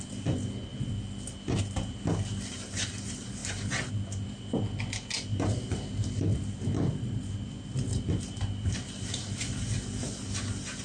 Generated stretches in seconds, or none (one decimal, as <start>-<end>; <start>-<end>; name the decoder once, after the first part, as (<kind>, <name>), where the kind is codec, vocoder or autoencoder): 3.4-3.9 (vocoder, BigVGAN v2); 5.3-9.4